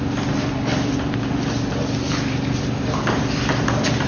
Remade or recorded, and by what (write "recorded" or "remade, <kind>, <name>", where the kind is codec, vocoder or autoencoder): recorded